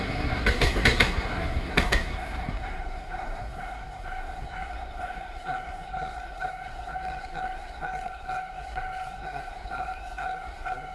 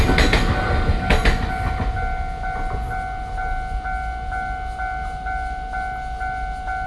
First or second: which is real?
second